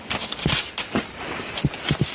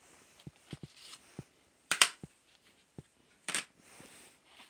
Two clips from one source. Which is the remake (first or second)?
second